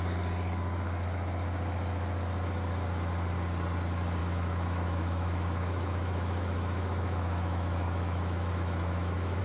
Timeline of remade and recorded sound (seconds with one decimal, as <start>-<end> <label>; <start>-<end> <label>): 0.0-4.2 recorded; 4.2-9.4 remade